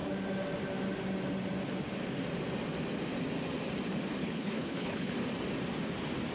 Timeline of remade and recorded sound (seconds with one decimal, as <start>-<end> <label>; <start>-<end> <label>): 0.0-4.2 recorded; 4.2-5.1 remade; 5.1-6.3 recorded